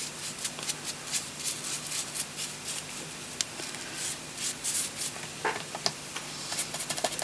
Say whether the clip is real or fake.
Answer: real